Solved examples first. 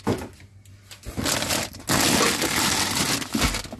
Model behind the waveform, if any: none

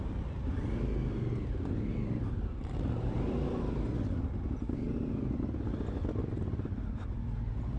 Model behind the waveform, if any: none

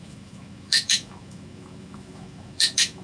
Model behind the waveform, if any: autoencoder, DAC-VAE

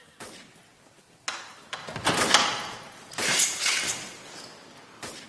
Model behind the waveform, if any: none